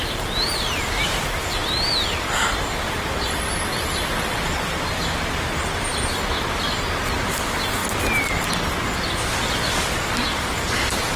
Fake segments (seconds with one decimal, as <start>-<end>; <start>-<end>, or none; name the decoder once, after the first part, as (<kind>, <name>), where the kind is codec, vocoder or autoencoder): none